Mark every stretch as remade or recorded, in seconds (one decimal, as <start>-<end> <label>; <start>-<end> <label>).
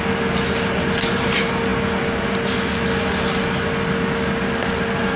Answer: 0.0-5.2 recorded